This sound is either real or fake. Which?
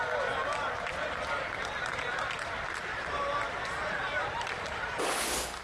real